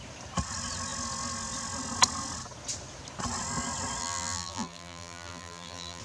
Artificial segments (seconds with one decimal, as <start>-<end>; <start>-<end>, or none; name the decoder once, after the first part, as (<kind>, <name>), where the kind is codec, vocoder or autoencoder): 4.0-6.0 (vocoder, BigVGAN v2)